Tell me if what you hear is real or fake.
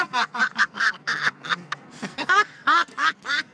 fake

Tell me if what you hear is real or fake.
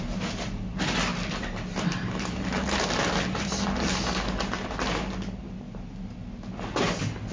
real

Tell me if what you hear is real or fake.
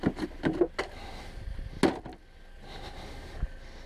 real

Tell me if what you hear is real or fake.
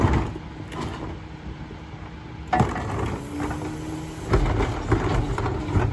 real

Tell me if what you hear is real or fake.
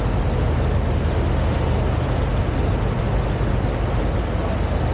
real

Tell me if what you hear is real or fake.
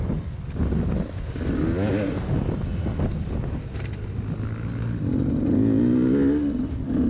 real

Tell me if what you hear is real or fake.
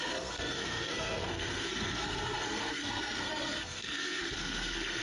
fake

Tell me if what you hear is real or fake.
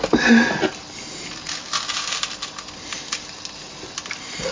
real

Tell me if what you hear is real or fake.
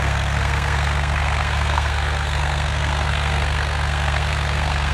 fake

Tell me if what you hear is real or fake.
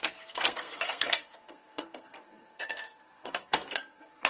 fake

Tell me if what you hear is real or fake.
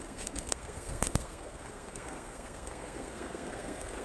fake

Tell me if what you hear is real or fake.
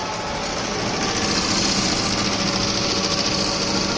real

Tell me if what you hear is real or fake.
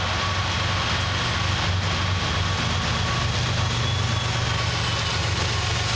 real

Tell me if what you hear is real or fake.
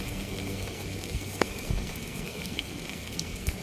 fake